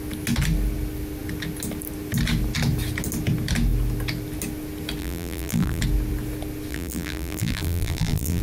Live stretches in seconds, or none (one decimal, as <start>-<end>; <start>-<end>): 0.0-5.0; 5.8-6.7